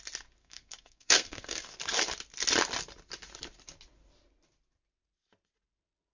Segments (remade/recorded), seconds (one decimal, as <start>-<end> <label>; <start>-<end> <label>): 0.0-0.4 recorded; 0.4-1.8 remade; 1.8-6.1 recorded